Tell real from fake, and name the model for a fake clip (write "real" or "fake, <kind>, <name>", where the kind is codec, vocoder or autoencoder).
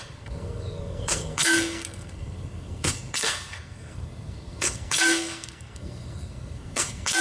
fake, codec, SNAC